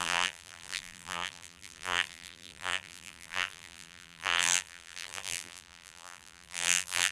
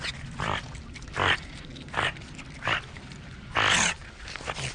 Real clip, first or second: second